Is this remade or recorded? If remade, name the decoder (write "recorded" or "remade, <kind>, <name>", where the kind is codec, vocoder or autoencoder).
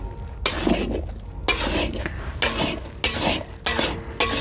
recorded